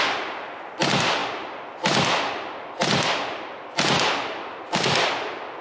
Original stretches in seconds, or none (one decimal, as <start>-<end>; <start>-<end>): 0.0-5.6